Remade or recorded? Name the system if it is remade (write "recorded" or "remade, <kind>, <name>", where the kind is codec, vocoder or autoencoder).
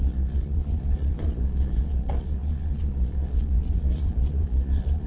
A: remade, vocoder, Vocos